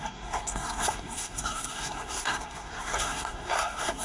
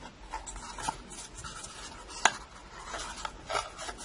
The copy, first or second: first